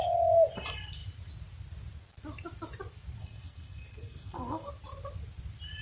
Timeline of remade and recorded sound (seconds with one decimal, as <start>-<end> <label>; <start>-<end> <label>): 0.0-3.2 recorded; 3.2-4.7 remade; 4.7-5.8 recorded